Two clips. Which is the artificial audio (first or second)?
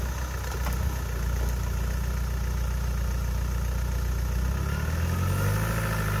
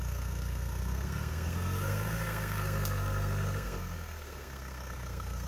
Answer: second